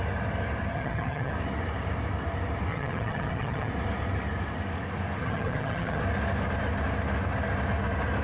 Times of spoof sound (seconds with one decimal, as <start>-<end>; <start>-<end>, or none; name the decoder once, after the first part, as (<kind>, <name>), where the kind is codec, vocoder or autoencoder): 0.7-1.3 (vocoder, HiFi-GAN); 2.7-3.7; 5.2-6.0